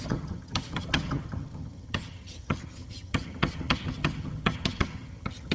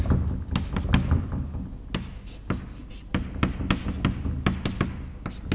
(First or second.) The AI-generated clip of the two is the first